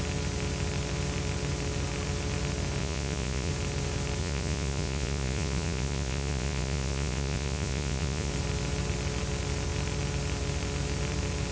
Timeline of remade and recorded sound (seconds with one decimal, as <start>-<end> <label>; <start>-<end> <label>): 0.0-2.8 recorded; 2.8-3.5 remade; 3.5-4.2 recorded; 4.2-8.3 remade; 8.3-11.5 recorded